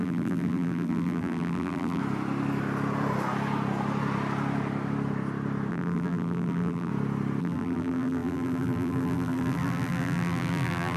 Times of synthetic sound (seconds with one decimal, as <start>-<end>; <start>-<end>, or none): 0.0-2.0; 5.7-6.9; 7.4-11.0